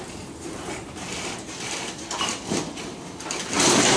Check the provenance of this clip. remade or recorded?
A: recorded